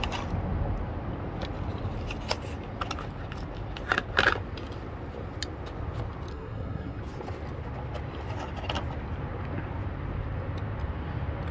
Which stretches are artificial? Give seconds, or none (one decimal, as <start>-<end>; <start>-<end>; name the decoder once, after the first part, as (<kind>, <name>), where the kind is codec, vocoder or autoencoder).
6.3-7.0 (codec, SNAC)